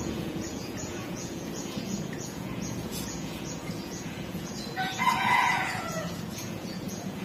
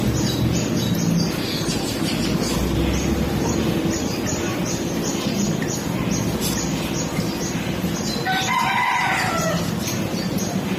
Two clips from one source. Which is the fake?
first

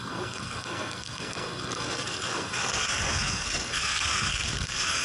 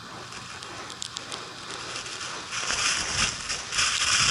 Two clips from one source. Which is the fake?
first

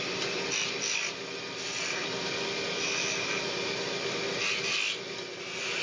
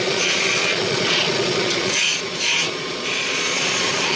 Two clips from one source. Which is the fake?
second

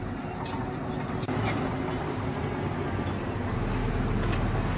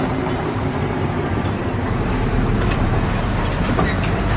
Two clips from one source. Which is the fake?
second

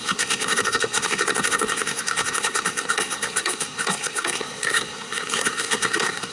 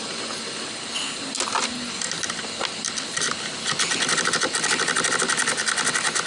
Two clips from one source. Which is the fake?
first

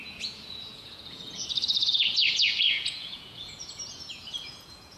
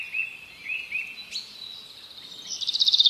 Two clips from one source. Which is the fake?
first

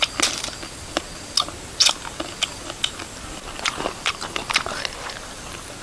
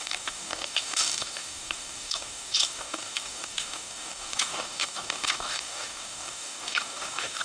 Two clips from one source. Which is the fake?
second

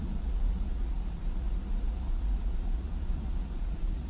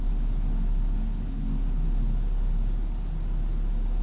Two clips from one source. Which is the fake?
first